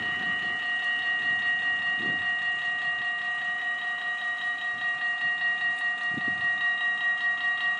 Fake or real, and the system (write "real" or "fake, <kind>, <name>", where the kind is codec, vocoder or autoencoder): real